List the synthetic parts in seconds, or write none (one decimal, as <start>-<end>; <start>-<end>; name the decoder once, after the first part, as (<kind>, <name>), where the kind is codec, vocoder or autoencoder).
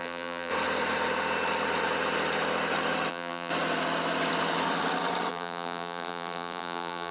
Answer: 0.0-0.5 (vocoder, BigVGAN v2); 3.1-3.5; 5.3-7.1